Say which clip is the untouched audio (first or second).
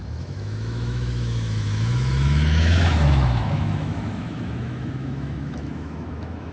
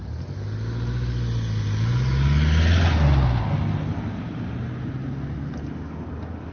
second